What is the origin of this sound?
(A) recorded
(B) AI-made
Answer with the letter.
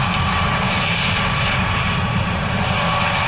B